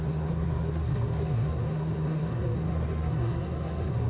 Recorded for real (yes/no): no